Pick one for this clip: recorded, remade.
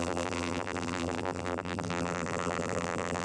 remade